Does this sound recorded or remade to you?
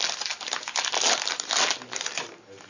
recorded